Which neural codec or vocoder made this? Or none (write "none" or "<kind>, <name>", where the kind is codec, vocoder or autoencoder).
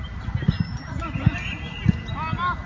none